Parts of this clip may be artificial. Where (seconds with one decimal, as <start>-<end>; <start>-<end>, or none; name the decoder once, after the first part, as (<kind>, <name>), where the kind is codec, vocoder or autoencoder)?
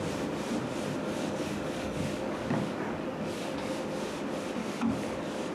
1.0-3.7 (codec, DAC); 4.6-5.5